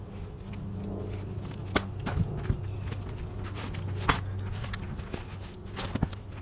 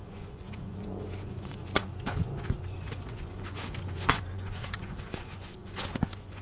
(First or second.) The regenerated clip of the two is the second